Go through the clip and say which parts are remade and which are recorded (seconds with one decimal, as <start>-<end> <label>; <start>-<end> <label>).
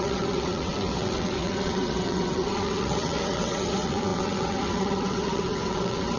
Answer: 0.0-6.2 remade